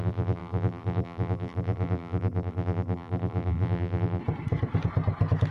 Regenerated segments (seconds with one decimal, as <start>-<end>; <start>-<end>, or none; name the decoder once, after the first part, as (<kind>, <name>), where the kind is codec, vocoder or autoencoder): 0.0-4.2 (vocoder, BigVGAN v2)